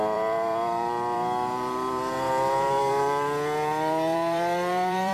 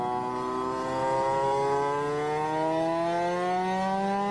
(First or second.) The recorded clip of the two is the second